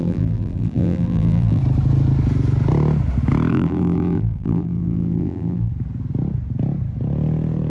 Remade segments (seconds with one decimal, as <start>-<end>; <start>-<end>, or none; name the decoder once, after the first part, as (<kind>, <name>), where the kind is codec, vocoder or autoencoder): 0.0-1.6 (vocoder, BigVGAN v2); 3.5-5.7